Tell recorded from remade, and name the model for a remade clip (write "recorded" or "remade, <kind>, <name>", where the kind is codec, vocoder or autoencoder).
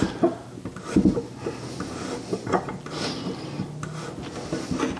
recorded